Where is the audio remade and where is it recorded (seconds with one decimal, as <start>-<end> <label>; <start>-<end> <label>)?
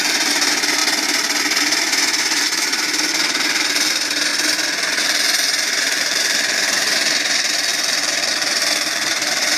0.0-0.8 remade; 0.8-2.2 recorded; 2.2-4.3 remade; 4.3-5.0 recorded; 5.0-9.6 remade